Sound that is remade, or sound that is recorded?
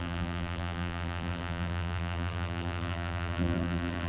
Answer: remade